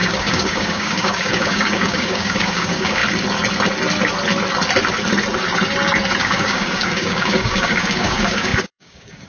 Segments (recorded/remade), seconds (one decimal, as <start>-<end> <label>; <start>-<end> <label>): 0.0-3.0 remade; 3.0-6.2 recorded; 6.2-9.3 remade